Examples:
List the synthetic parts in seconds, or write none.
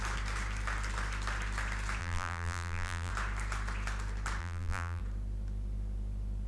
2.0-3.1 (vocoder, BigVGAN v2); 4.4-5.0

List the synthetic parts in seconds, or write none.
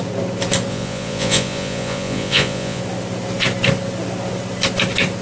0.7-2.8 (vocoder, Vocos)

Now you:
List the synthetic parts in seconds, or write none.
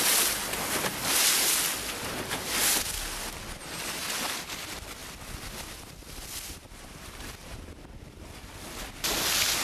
7.4-8.0 (vocoder, BigVGAN v2)